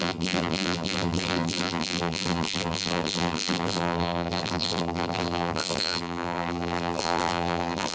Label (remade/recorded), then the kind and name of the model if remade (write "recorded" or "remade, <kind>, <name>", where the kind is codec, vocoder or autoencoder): remade, vocoder, BigVGAN v2